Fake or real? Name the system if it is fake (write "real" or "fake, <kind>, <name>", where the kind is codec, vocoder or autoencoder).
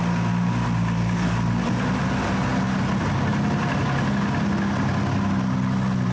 real